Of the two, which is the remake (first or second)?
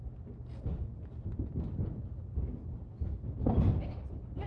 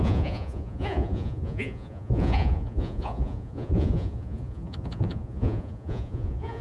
second